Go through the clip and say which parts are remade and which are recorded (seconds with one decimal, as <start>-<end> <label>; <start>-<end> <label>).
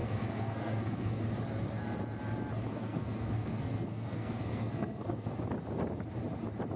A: 0.0-1.2 remade; 1.2-2.7 recorded; 2.7-5.3 remade; 5.3-6.8 recorded